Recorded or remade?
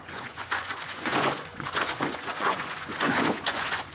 remade